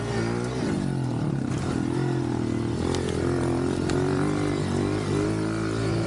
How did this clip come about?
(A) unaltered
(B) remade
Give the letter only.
A